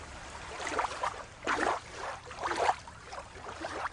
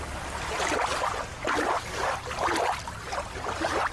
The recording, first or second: second